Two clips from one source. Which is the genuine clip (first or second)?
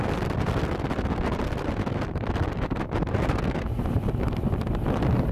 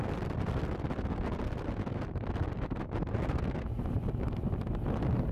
second